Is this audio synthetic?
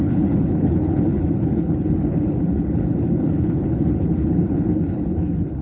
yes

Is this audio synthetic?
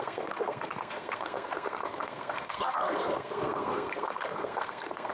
yes